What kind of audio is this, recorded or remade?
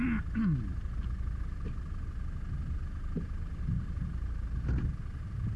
recorded